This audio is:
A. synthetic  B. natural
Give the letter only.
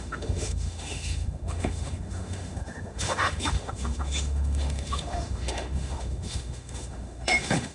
A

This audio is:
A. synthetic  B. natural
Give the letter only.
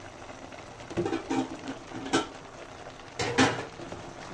B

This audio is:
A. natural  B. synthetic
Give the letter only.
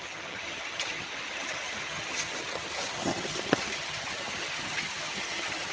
B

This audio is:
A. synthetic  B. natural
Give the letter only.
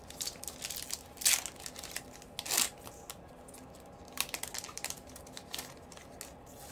B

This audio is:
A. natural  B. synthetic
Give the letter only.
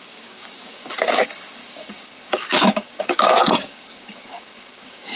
B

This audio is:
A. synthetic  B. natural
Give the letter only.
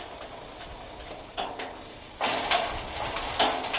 B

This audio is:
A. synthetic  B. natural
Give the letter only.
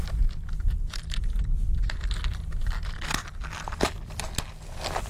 B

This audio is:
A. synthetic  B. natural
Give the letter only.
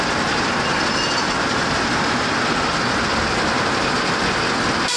B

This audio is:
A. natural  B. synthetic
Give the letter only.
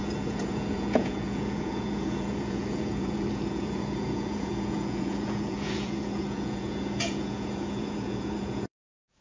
B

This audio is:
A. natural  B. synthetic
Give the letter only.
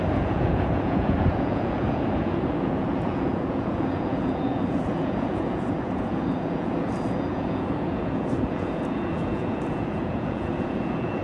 B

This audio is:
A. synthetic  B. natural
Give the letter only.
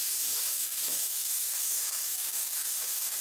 A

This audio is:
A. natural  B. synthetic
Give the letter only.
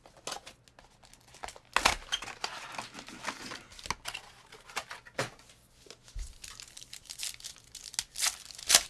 A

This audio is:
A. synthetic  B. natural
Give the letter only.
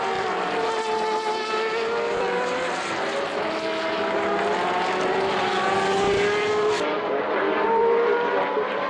B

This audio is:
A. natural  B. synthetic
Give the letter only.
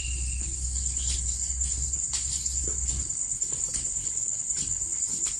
B